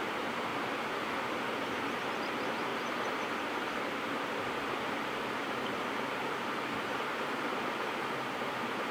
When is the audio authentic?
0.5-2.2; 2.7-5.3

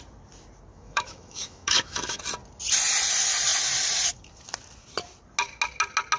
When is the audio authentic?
0.0-0.7; 2.2-6.2